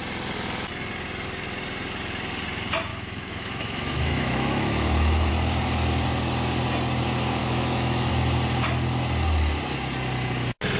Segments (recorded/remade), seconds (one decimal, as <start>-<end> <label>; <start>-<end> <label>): 0.0-2.9 recorded; 2.9-5.3 remade; 5.3-7.4 recorded; 7.4-8.1 remade; 8.1-10.8 recorded